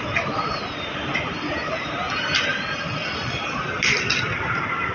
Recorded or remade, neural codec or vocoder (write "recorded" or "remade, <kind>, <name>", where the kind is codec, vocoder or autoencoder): recorded